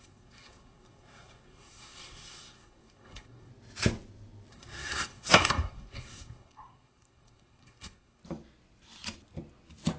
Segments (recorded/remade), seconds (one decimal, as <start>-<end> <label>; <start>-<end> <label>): 0.0-3.5 remade; 3.5-4.5 recorded; 4.5-8.2 remade; 8.2-10.0 recorded